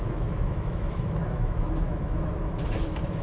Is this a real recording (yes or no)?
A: no